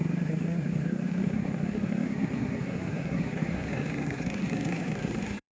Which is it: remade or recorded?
remade